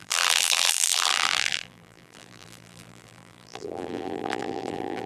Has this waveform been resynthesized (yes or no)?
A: yes